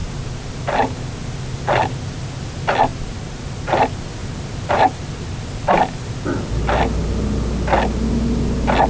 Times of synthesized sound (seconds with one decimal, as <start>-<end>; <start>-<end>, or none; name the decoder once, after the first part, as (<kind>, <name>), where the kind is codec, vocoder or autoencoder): 2.9-3.6 (vocoder, BigVGAN v2); 4.2-5.4